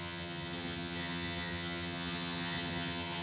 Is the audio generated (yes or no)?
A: yes